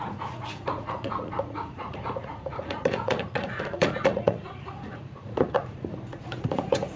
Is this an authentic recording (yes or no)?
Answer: no